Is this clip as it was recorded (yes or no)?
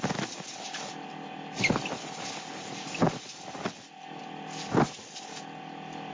yes